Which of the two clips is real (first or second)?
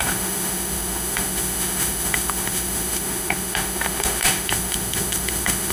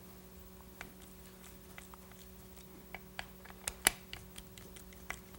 second